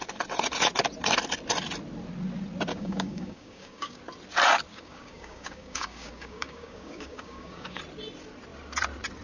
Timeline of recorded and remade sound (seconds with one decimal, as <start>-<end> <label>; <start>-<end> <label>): 0.0-2.7 recorded; 2.7-4.0 remade; 4.0-4.7 recorded; 4.7-7.8 remade; 7.8-9.2 recorded